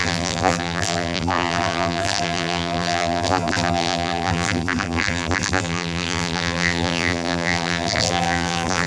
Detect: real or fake fake